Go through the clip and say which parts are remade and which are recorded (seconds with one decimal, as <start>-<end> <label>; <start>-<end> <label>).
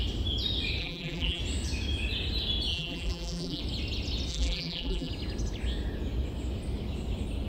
0.0-0.8 recorded; 0.8-1.4 remade; 1.4-2.7 recorded; 2.7-3.6 remade; 3.6-4.3 recorded; 4.3-5.1 remade; 5.1-7.5 recorded